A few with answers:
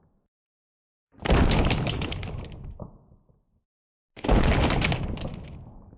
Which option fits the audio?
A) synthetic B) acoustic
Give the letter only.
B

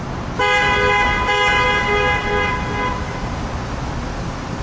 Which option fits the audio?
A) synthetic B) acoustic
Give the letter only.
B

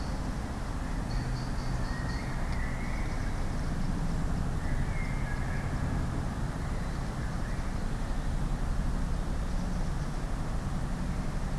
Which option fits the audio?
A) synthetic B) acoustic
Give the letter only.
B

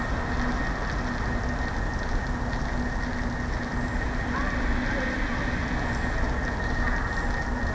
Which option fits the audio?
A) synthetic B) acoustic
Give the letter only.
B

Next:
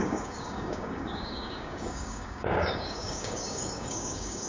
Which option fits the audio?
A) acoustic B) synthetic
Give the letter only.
B